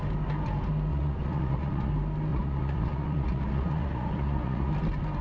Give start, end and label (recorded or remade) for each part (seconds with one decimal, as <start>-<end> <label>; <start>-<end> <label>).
0.0-0.9 recorded; 0.9-1.9 remade; 1.9-2.3 recorded; 2.3-4.7 remade; 4.7-5.2 recorded